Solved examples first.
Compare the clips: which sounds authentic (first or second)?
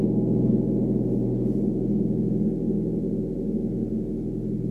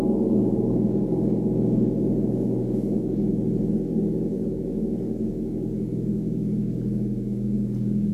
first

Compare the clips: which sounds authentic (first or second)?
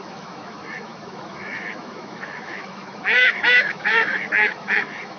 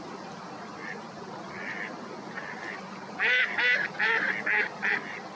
second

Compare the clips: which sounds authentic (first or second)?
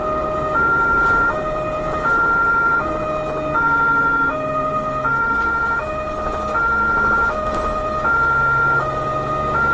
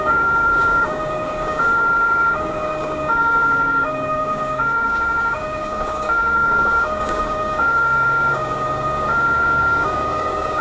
first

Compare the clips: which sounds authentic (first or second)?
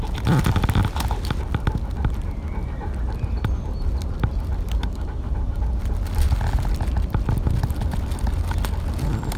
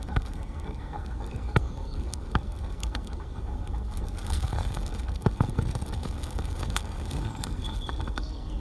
first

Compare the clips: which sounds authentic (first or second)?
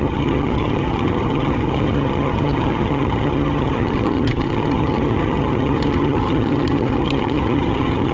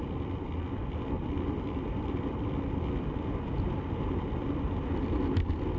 second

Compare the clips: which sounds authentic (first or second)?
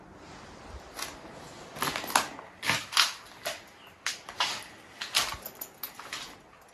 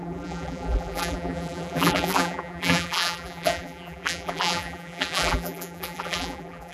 first